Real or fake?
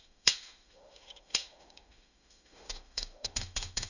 fake